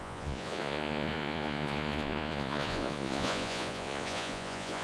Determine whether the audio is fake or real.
fake